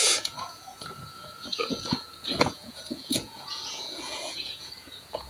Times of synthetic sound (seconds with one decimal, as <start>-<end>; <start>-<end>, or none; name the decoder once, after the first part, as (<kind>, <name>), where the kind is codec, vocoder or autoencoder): 0.0-5.3 (vocoder, Vocos)